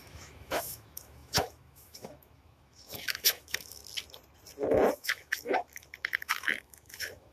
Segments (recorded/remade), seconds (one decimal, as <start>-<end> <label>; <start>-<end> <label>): 0.0-3.8 remade; 3.8-4.9 recorded; 4.9-7.3 remade